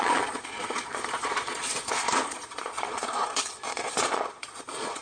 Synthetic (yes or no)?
yes